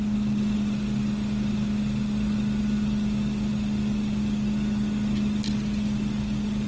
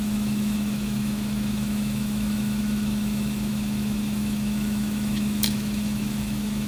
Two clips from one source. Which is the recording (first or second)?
first